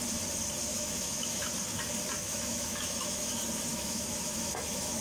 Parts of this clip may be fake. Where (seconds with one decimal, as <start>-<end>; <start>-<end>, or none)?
0.7-1.5; 2.2-3.3; 3.7-5.0